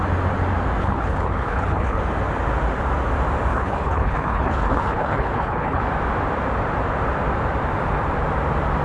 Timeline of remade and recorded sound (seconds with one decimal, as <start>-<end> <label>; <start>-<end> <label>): 0.0-0.8 recorded; 0.8-2.0 remade; 2.0-3.5 recorded; 3.5-5.8 remade; 5.8-8.8 recorded